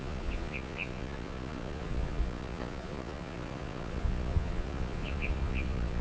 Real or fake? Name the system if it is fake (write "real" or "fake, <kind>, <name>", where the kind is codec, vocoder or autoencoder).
fake, vocoder, Vocos